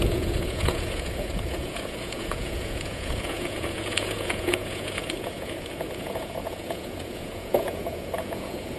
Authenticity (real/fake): fake